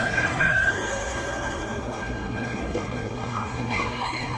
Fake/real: fake